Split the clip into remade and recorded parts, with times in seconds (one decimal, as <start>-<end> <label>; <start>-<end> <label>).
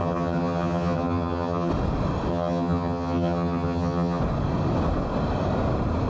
0.0-1.7 remade; 1.7-2.3 recorded; 2.3-4.2 remade; 4.2-6.1 recorded